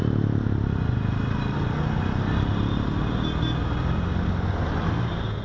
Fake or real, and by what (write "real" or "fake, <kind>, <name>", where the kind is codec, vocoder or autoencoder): real